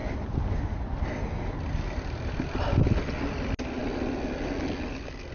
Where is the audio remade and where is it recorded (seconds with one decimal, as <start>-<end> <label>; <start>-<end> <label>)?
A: 0.0-5.3 recorded

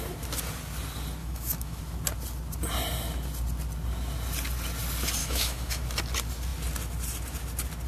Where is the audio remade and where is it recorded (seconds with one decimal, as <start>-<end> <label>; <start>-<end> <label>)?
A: 0.0-1.2 recorded; 1.2-1.8 remade; 1.8-5.2 recorded; 5.2-5.8 remade; 5.8-7.9 recorded

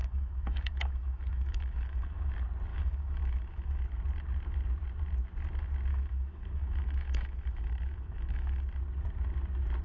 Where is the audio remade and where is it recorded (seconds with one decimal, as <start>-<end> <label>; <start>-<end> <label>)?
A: 0.0-2.3 remade; 2.3-2.7 recorded; 2.7-3.8 remade; 3.8-5.9 recorded; 5.9-8.6 remade; 8.6-9.8 recorded

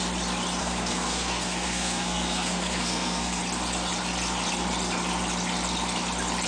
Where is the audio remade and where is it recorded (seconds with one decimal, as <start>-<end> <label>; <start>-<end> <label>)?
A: 0.0-0.6 recorded; 0.6-3.4 remade; 3.4-6.5 recorded

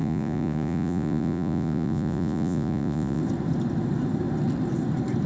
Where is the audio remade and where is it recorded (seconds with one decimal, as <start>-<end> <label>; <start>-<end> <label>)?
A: 0.0-3.2 remade; 3.2-5.3 recorded

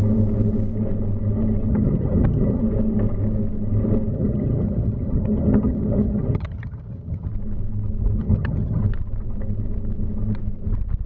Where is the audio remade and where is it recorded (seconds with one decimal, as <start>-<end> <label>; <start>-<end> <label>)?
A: 0.0-1.7 recorded; 1.7-2.6 remade; 2.6-4.1 recorded; 4.1-7.3 remade; 7.3-8.2 recorded; 8.2-8.8 remade; 8.8-11.1 recorded

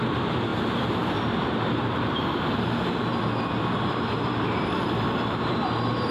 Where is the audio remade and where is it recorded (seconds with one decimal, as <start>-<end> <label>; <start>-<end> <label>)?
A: 0.0-3.1 remade; 3.1-3.9 recorded; 3.9-6.1 remade